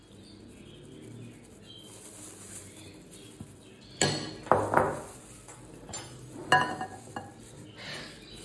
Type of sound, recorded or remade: recorded